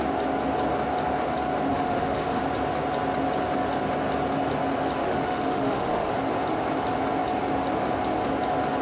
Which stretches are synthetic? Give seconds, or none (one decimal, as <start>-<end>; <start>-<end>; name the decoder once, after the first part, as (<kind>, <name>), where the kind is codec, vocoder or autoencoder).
1.7-2.4 (autoencoder, DAC-VAE); 5.0-6.1